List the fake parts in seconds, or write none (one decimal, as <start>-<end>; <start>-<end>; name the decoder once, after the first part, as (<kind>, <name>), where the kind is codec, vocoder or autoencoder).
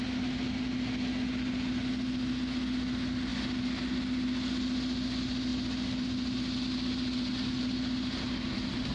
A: none